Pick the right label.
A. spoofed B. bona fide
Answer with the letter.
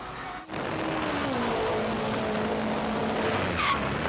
B